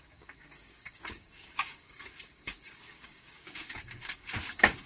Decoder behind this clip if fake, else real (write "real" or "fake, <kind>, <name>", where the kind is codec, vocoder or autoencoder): fake, codec, DAC